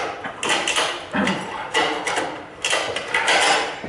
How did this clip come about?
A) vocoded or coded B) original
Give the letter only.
B